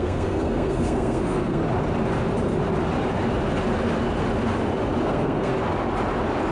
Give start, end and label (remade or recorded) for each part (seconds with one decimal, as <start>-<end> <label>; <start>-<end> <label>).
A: 0.0-1.6 remade; 1.6-5.0 recorded; 5.0-5.5 remade; 5.5-6.5 recorded